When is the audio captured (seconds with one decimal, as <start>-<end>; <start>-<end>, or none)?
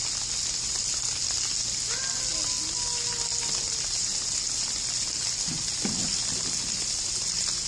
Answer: 0.0-7.7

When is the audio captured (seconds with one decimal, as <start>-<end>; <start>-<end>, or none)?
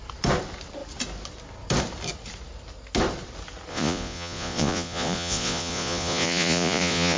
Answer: 0.0-3.7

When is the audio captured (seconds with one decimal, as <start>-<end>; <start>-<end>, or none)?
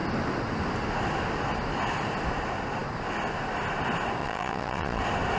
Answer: 0.0-4.2; 5.0-5.4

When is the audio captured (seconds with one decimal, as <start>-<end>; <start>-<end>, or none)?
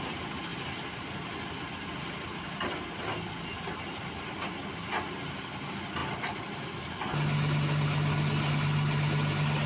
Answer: 0.0-9.7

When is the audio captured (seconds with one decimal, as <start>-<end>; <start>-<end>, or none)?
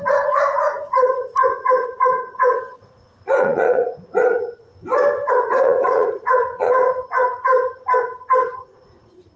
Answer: 4.7-5.3; 7.5-8.6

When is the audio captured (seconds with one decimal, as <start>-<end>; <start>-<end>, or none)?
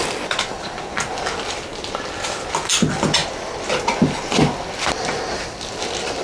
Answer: 0.0-6.2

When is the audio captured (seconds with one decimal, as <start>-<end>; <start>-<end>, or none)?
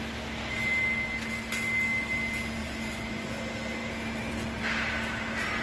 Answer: 0.0-2.6; 3.4-5.6